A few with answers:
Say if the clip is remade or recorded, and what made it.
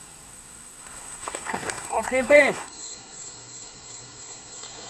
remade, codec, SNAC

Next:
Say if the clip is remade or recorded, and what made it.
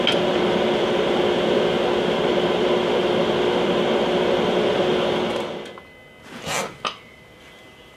recorded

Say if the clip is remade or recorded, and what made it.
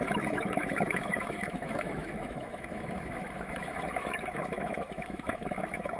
remade, autoencoder, DAC-VAE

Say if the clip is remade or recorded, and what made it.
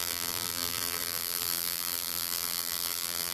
remade, vocoder, BigVGAN v2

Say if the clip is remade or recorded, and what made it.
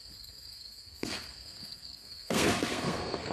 remade, codec, SNAC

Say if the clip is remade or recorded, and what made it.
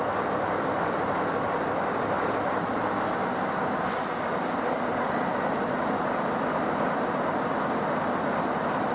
remade, vocoder, BigVGAN v2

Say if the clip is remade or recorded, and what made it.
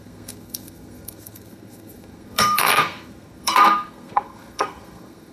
remade, codec, SNAC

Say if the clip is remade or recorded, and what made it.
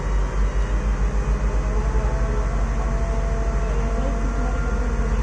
recorded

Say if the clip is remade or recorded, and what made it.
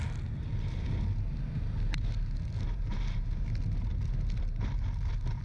recorded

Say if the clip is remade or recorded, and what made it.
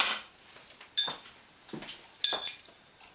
recorded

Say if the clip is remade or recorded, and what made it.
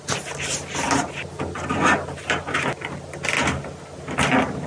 recorded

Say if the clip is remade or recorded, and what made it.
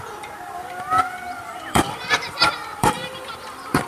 remade, vocoder, BigVGAN v2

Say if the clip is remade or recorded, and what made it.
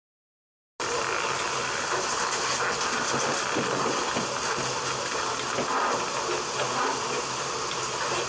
recorded